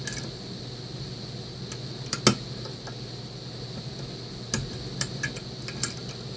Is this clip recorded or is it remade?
recorded